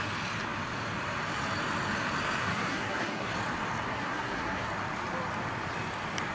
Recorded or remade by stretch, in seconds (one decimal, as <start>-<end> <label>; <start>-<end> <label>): 0.0-2.4 recorded; 2.4-3.3 remade; 3.3-3.9 recorded; 3.9-4.7 remade; 4.7-6.3 recorded